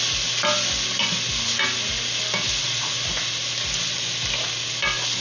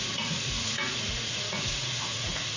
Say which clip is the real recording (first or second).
first